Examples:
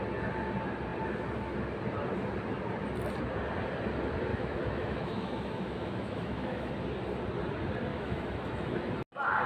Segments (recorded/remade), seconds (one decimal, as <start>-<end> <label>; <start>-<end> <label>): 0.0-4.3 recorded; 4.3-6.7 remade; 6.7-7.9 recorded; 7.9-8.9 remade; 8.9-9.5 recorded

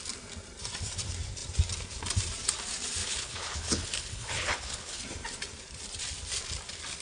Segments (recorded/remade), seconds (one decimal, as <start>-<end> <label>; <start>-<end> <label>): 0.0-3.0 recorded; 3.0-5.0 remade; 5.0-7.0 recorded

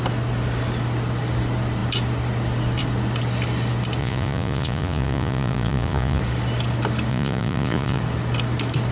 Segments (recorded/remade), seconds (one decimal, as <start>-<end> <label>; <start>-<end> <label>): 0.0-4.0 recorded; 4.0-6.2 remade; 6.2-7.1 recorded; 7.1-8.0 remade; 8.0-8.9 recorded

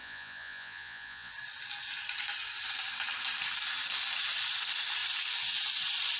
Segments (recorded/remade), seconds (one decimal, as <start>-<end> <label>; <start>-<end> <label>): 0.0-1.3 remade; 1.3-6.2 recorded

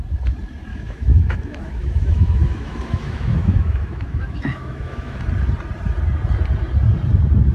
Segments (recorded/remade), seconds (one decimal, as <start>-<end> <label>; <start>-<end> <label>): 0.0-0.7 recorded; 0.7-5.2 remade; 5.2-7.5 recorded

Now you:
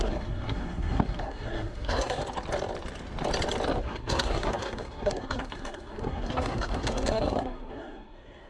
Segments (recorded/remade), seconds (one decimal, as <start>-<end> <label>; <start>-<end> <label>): 0.0-2.2 remade; 2.2-3.8 recorded; 3.8-8.5 remade

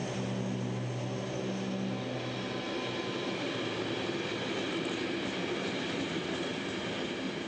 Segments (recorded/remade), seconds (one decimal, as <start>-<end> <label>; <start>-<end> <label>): 0.0-7.5 recorded

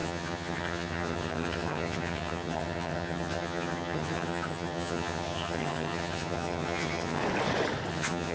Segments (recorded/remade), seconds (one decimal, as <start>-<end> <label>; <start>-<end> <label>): 0.0-7.2 remade; 7.2-7.9 recorded; 7.9-8.3 remade